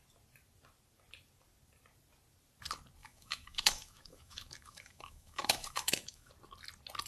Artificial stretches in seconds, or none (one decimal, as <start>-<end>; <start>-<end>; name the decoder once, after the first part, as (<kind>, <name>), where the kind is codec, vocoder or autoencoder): 3.0-6.3 (autoencoder, DAC-VAE)